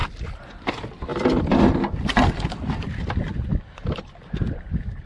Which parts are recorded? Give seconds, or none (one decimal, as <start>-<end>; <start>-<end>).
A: 0.0-5.1